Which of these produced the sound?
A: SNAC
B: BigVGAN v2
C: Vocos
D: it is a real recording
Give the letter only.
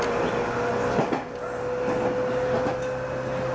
D